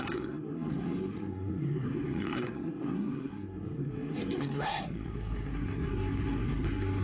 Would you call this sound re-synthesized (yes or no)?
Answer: yes